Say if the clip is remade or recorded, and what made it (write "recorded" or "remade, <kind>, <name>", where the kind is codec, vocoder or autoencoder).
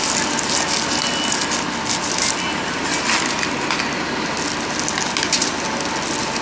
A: recorded